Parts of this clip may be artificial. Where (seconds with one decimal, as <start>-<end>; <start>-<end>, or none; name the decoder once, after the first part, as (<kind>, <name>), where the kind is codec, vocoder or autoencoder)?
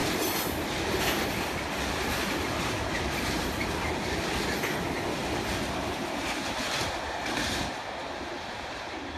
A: none